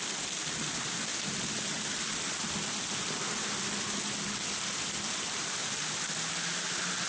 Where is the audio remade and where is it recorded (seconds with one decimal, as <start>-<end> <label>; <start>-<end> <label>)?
0.0-7.1 recorded